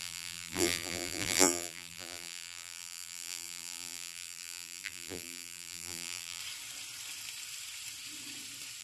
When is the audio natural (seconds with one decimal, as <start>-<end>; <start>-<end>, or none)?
6.4-8.8